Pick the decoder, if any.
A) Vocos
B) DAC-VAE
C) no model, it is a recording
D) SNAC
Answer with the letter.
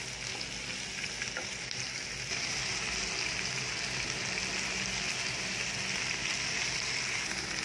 C